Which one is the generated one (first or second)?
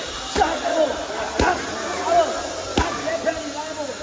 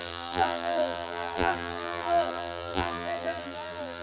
second